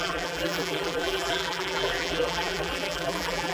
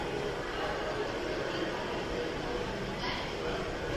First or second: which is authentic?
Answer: second